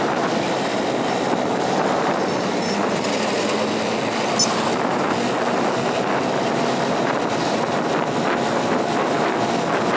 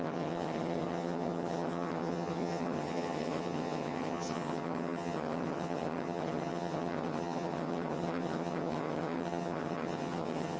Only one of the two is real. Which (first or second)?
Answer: first